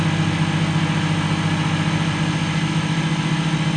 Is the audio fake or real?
real